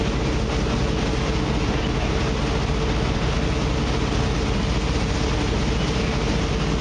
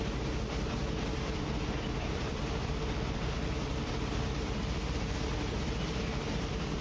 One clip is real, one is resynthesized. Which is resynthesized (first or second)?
second